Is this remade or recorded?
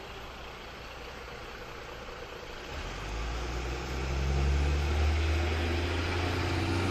recorded